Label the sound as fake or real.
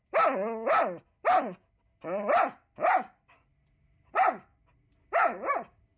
real